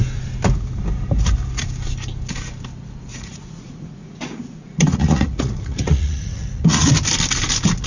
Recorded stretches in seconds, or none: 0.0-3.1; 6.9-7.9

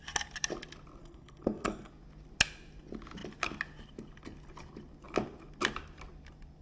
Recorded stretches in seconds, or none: 0.0-1.0; 1.9-6.6

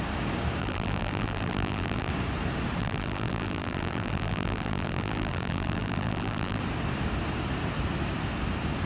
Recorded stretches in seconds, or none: 0.0-0.6; 2.1-2.8; 6.6-8.9